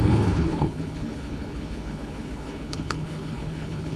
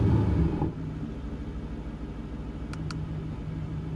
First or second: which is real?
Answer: second